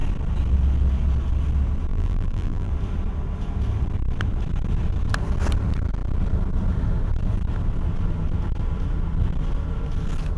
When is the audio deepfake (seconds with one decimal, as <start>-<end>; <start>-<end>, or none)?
1.9-2.7